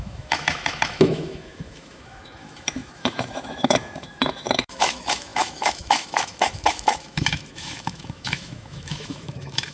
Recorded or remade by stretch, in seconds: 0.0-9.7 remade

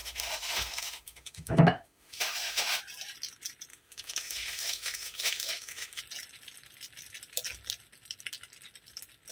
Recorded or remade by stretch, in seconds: 0.0-2.8 remade; 2.8-3.7 recorded; 3.7-6.0 remade; 6.0-9.3 recorded

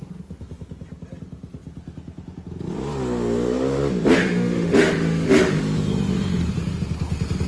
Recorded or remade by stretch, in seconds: 0.0-4.2 recorded; 4.2-5.6 remade; 5.6-7.5 recorded

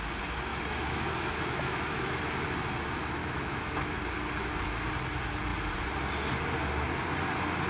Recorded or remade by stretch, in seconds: 0.0-0.5 recorded; 0.5-2.2 remade; 2.2-3.2 recorded; 3.2-4.0 remade; 4.0-7.7 recorded

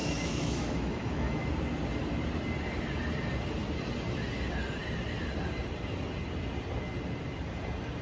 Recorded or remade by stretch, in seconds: 0.0-1.5 remade; 1.5-8.0 recorded

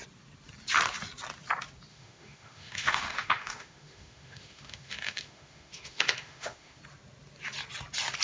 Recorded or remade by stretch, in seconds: 0.0-1.9 recorded; 1.9-6.8 remade; 6.8-8.2 recorded

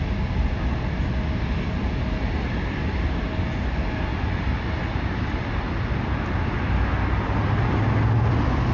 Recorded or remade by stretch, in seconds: 0.0-8.7 recorded